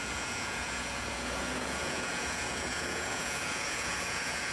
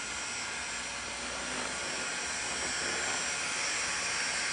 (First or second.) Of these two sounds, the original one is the second